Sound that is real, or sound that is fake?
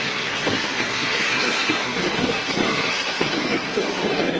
fake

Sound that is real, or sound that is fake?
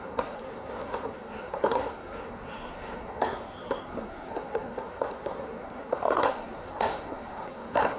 fake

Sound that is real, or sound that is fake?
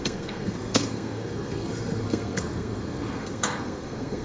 fake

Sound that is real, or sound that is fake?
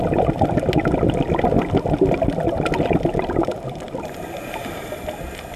real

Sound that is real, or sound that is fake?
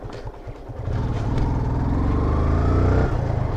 real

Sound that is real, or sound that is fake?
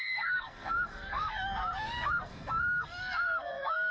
fake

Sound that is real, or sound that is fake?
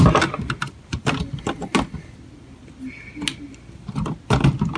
real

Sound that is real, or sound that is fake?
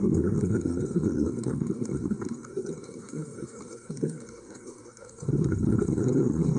fake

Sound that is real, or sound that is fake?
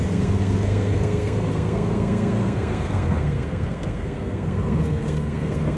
fake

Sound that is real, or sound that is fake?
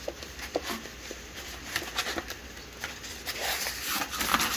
real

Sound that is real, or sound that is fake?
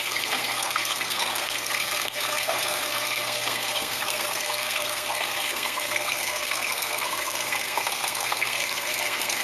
fake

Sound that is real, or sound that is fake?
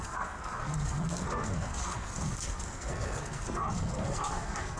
fake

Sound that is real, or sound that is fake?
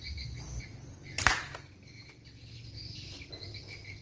real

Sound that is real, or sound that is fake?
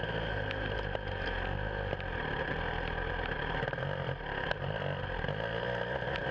real